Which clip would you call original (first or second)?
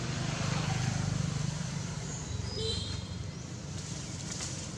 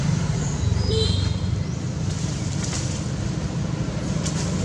second